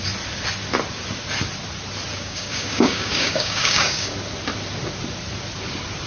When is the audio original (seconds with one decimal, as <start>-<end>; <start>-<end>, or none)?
0.0-2.2; 4.1-6.1